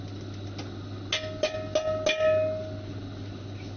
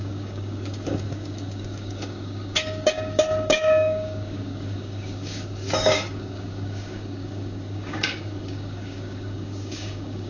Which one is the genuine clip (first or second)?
first